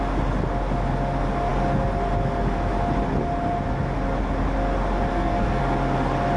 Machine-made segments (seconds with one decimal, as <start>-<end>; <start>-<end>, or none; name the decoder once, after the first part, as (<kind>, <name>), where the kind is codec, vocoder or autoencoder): 5.1-5.6 (codec, SNAC)